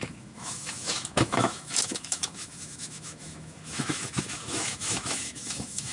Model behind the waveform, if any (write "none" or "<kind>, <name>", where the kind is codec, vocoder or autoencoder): autoencoder, DAC-VAE